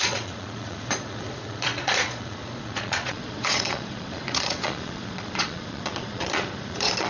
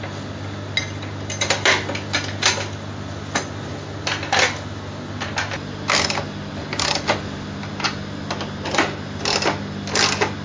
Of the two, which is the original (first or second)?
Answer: second